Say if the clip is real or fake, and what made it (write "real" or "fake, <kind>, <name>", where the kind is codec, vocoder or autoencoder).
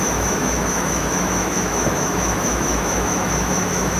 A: fake, autoencoder, DAC-VAE